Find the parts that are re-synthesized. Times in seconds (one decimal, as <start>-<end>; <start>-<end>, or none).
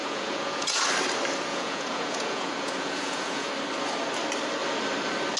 0.0-0.8; 1.5-3.5